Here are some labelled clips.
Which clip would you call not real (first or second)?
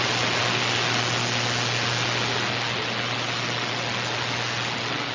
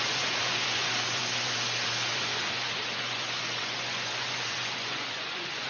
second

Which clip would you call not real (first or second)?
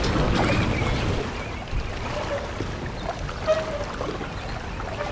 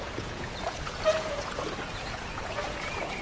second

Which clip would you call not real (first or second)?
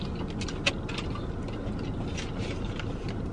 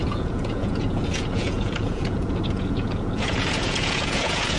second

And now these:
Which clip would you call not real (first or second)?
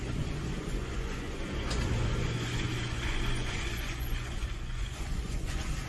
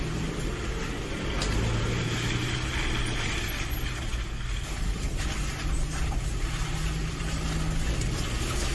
first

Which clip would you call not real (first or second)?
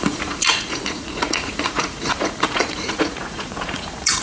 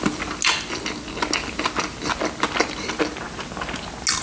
first